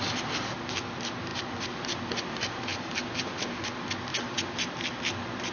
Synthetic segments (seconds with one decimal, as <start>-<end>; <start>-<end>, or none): 2.7-3.5